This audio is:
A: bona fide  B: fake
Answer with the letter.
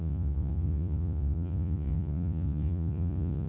B